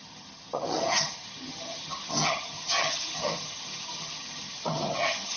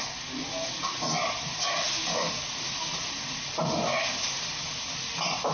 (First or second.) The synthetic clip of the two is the first